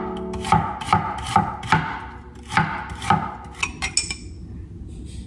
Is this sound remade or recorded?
recorded